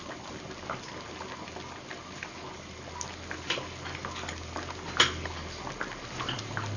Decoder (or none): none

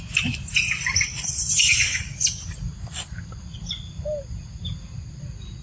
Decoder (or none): none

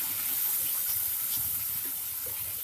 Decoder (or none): none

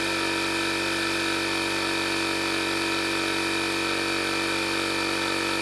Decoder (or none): none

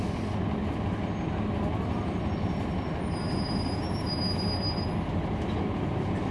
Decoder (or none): none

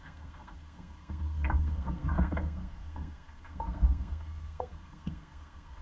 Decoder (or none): codec, SNAC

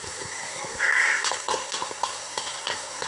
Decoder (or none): codec, SNAC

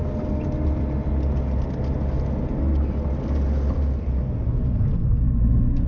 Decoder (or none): none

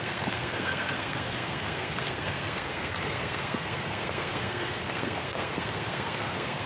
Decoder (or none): codec, SNAC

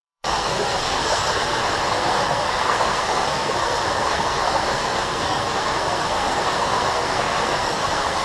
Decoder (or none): codec, SNAC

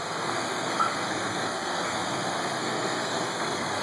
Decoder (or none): codec, SNAC